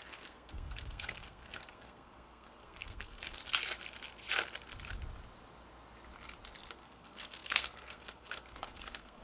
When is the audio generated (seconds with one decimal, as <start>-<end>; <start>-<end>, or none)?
0.0-3.4; 6.7-9.2